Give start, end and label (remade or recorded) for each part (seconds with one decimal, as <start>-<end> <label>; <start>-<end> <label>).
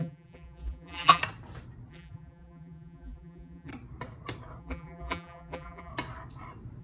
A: 0.0-1.2 remade; 1.2-1.9 recorded; 1.9-3.7 remade; 3.7-4.6 recorded; 4.6-5.9 remade; 5.9-6.8 recorded